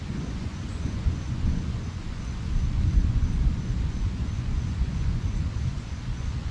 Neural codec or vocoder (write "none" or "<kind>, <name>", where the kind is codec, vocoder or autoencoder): vocoder, Vocos